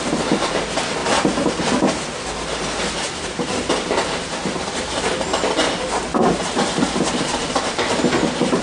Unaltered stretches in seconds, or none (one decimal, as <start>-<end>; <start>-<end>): 0.0-1.0; 1.5-8.6